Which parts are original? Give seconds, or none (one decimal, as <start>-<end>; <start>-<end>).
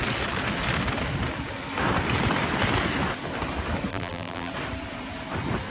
0.0-3.9; 4.5-5.7